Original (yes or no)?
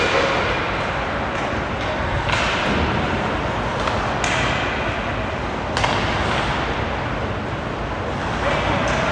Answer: yes